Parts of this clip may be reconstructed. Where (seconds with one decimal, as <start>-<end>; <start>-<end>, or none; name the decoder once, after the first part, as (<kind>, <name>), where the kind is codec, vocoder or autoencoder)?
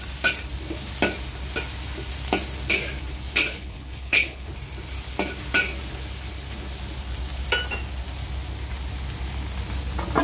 3.5-4.5 (codec, HILCodec)